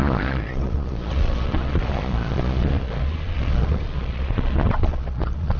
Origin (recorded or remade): remade